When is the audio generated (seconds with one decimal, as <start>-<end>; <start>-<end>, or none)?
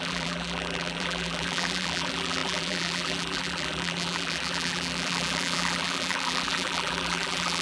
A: 0.0-7.6